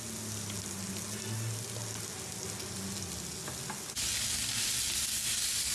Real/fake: real